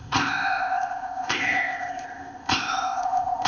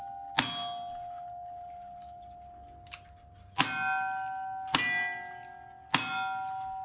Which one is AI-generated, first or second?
first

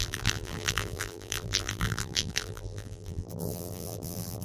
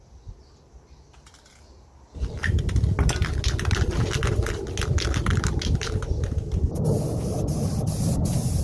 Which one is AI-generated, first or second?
first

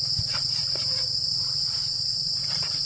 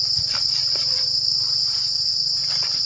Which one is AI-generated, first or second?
first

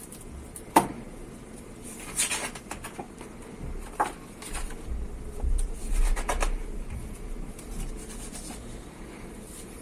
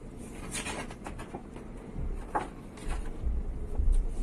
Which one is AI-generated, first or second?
second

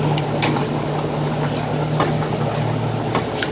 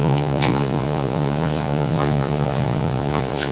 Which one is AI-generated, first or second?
second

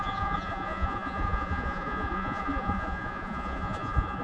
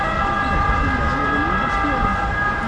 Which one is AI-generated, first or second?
first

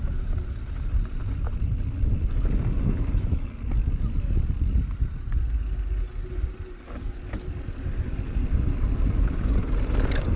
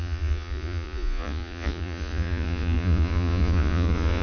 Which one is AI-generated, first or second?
second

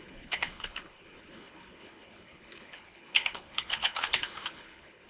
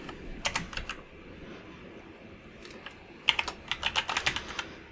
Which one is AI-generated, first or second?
first